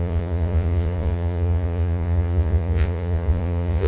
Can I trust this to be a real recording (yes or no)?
no